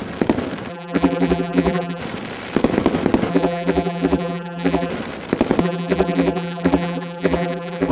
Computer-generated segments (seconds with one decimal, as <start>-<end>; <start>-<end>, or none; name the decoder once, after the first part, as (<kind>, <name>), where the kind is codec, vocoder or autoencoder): 0.7-2.0 (vocoder, BigVGAN v2); 3.3-4.9; 5.6-7.9